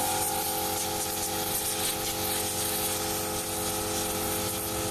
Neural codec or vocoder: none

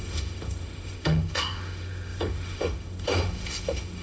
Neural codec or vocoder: autoencoder, DAC-VAE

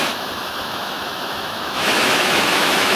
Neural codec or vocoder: autoencoder, DAC-VAE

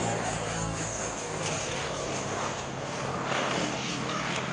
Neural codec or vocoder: codec, DAC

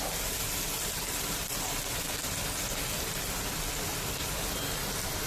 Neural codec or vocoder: none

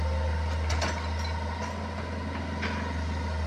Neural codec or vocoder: none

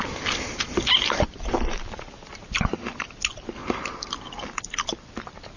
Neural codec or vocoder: none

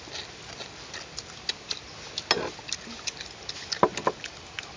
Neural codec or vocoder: none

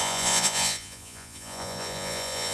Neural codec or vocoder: vocoder, Vocos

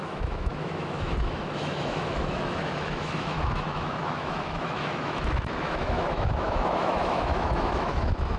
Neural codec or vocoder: autoencoder, DAC-VAE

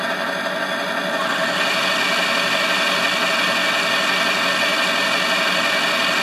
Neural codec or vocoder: none